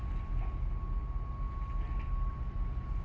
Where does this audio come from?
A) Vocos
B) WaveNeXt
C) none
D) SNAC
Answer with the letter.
C